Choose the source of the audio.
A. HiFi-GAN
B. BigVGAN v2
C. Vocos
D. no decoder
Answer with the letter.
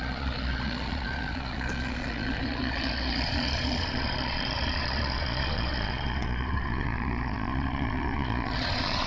C